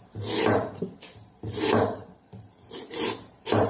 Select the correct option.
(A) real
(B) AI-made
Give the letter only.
B